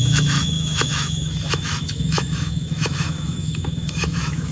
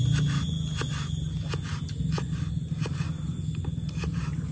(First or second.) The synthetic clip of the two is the first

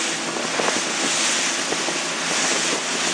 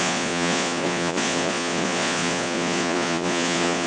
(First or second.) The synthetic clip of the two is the second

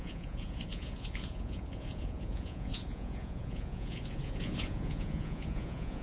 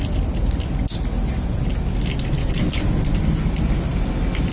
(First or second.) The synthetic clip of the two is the first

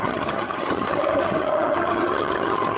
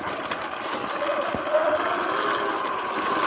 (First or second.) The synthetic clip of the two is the first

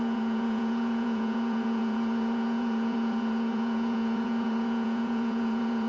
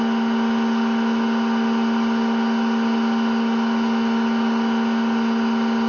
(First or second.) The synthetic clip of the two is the first